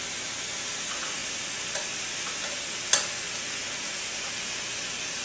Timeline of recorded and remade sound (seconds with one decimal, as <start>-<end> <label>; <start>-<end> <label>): 0.0-5.2 recorded